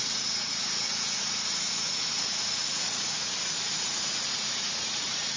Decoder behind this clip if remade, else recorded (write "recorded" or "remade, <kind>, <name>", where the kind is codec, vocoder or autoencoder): remade, vocoder, Vocos